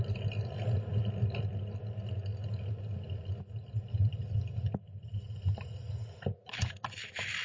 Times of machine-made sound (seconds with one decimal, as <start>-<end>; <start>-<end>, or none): none